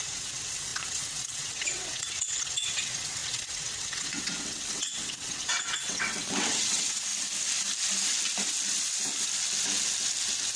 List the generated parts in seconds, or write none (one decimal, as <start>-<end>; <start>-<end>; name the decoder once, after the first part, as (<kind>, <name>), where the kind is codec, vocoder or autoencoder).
0.0-7.1 (vocoder, WaveNeXt)

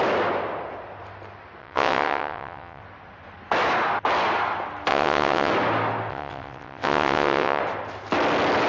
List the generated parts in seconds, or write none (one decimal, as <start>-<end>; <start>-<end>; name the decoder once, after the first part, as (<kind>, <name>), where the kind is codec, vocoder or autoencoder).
1.6-2.8 (vocoder, WaveNeXt); 4.9-5.5; 6.1-7.6

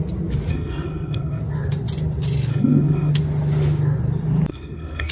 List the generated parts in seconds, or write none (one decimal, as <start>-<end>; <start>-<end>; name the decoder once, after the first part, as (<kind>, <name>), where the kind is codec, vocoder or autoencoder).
0.5-1.4 (codec, SNAC); 2.5-3.1; 4.5-5.1

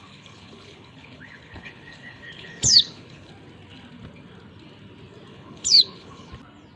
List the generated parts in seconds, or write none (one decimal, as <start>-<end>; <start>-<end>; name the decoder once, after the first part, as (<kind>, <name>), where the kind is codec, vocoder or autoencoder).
0.0-3.3 (codec, HILCodec); 5.3-6.3